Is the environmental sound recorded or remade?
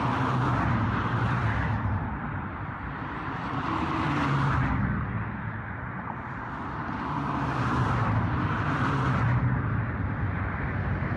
remade